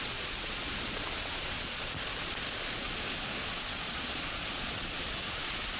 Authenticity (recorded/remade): remade